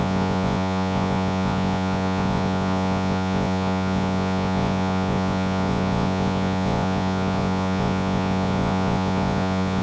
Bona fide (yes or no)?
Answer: no